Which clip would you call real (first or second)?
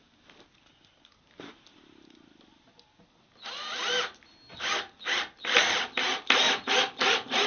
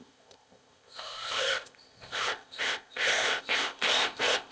first